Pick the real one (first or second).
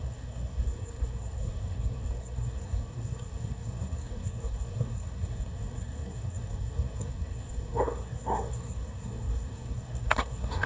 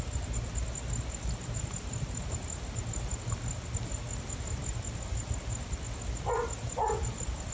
second